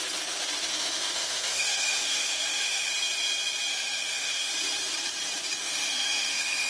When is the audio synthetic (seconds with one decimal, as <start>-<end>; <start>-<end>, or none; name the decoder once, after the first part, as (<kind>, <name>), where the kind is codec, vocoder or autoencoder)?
0.7-2.9 (autoencoder, DAC-VAE); 3.7-4.5; 5.6-6.7